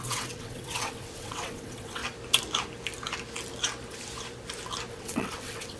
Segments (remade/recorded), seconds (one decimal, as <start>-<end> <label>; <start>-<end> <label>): 0.0-2.0 remade; 2.0-4.9 recorded; 4.9-5.8 remade